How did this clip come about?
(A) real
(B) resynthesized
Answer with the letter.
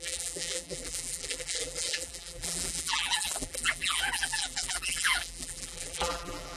B